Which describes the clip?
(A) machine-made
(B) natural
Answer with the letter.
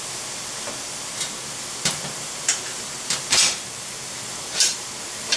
A